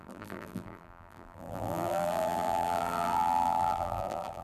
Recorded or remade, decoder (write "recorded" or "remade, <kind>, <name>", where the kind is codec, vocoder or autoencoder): remade, vocoder, BigVGAN v2